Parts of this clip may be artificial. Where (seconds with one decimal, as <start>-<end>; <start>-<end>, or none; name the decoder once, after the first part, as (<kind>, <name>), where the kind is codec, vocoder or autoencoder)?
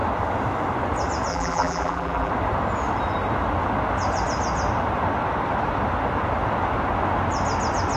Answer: 1.3-2.3 (vocoder, BigVGAN v2)